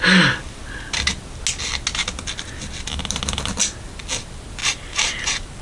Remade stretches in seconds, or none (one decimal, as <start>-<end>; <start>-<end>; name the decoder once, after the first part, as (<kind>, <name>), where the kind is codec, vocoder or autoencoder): 4.6-5.6 (vocoder, BigVGAN v2)